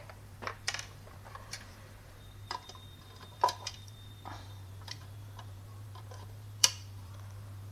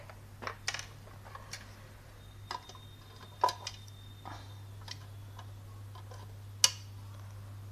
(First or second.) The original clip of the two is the second